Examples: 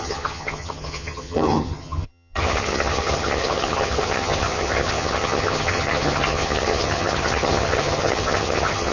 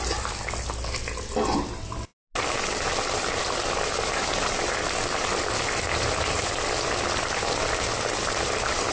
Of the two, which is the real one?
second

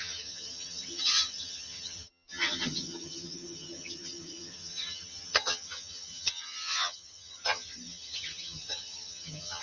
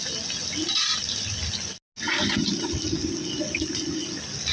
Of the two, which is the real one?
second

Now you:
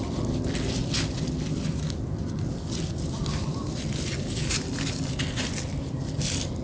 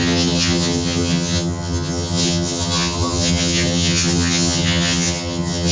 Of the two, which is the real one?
first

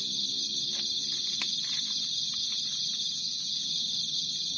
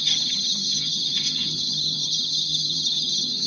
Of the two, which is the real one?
first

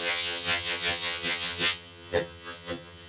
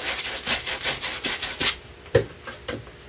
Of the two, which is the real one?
second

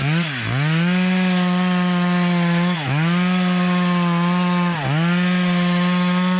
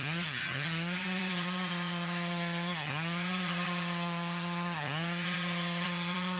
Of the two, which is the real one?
first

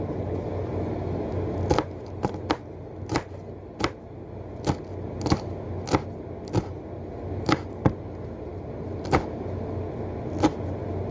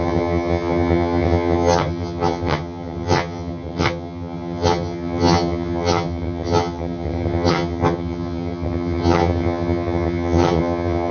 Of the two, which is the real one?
first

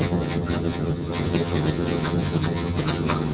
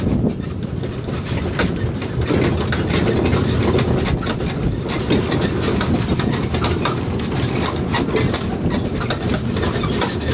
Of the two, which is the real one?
second